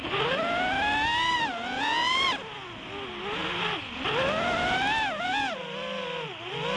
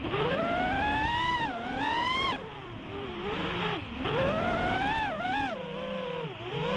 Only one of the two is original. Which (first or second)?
first